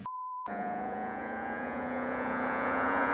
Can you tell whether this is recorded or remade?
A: remade